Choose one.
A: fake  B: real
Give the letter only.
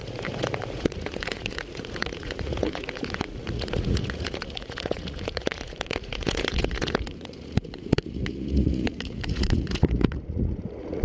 A